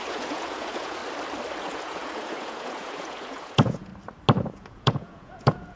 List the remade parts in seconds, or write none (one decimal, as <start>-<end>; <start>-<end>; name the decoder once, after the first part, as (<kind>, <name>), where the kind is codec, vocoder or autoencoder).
0.0-1.0 (vocoder, Vocos); 1.6-3.9; 4.5-5.8